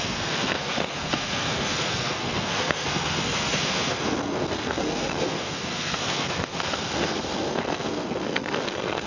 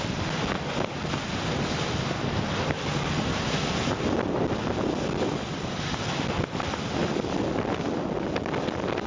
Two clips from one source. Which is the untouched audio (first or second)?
second